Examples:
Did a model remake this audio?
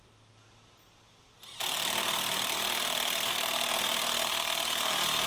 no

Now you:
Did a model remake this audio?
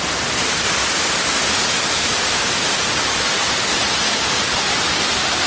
yes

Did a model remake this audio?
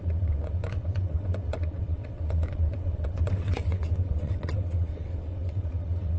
yes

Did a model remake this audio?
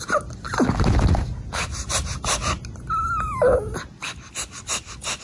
no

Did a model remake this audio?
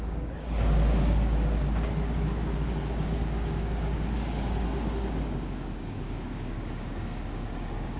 yes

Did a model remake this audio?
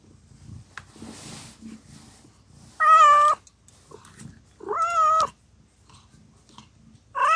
no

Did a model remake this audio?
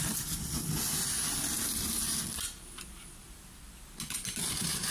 no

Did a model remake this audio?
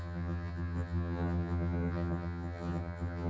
yes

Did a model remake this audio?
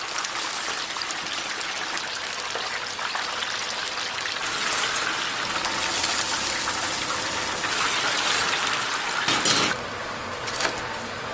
no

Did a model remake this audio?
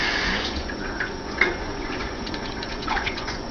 yes